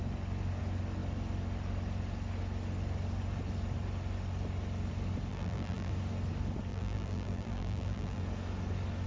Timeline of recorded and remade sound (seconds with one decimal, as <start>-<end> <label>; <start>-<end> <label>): 0.0-5.3 recorded; 5.3-5.9 remade; 5.9-6.7 recorded; 6.7-8.2 remade; 8.2-9.1 recorded